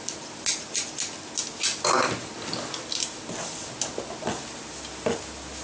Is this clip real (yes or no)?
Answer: yes